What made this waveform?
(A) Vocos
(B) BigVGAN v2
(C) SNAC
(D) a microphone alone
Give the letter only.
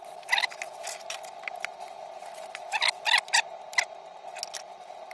D